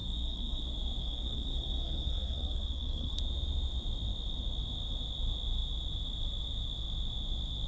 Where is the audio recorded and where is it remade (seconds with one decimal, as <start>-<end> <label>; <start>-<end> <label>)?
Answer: 0.0-0.6 remade; 0.6-1.0 recorded; 1.0-3.2 remade; 3.2-7.7 recorded